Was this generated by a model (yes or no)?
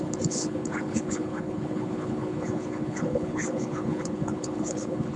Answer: yes